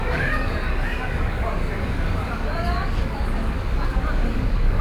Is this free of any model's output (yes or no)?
no